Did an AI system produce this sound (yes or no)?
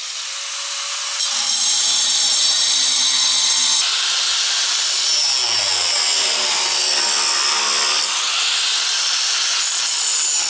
no